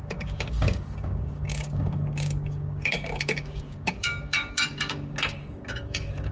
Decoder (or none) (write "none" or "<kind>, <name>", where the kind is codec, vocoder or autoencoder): codec, DAC